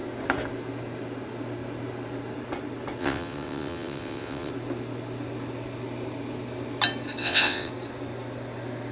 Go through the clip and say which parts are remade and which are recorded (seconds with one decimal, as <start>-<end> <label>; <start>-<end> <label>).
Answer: 0.0-3.0 recorded; 3.0-4.5 remade; 4.5-7.2 recorded; 7.2-7.7 remade; 7.7-8.9 recorded

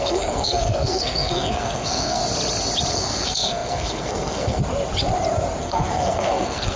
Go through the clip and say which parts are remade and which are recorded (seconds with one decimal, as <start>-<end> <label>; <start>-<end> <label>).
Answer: 0.0-2.2 remade; 2.2-2.9 recorded; 2.9-4.6 remade; 4.6-5.6 recorded; 5.6-6.8 remade

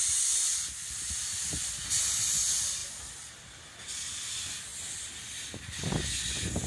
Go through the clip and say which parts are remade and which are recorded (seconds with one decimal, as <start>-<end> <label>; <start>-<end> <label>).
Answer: 0.0-6.7 recorded